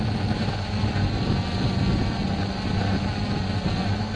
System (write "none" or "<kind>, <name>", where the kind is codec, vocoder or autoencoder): none